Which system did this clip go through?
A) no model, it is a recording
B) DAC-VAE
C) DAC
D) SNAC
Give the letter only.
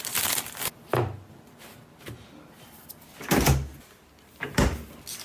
A